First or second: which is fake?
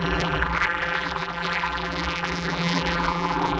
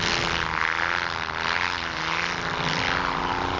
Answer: first